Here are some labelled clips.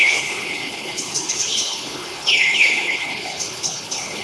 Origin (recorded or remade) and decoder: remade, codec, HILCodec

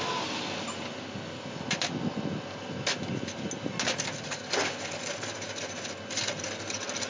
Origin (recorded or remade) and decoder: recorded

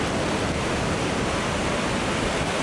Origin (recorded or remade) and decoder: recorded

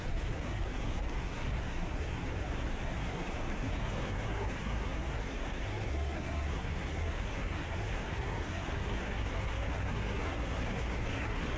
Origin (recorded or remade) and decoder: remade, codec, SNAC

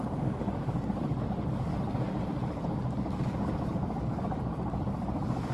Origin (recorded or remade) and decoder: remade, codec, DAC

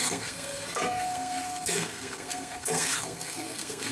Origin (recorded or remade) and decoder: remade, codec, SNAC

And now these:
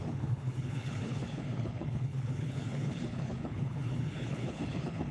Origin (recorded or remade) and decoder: remade, codec, HILCodec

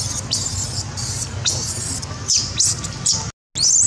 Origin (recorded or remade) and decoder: recorded